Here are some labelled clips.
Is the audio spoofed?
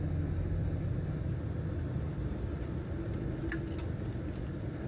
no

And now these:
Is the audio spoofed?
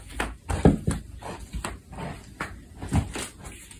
no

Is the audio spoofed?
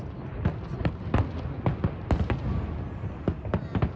no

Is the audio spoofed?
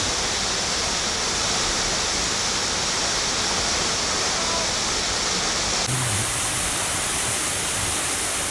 no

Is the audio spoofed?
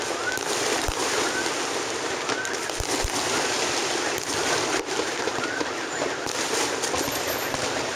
no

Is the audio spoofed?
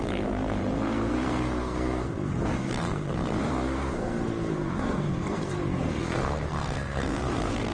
yes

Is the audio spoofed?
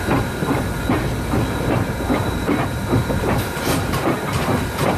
yes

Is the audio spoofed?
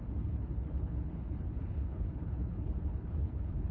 yes